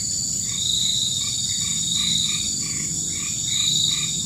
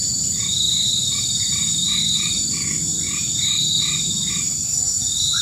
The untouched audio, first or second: first